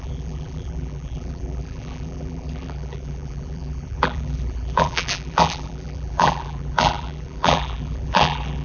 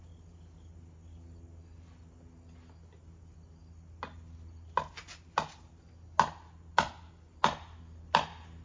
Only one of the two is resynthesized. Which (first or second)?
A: first